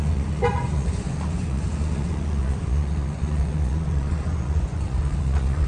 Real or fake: fake